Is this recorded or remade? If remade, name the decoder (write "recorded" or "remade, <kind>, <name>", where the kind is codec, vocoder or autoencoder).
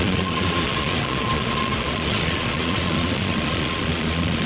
remade, vocoder, Vocos